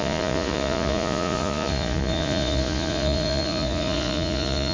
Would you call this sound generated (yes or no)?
yes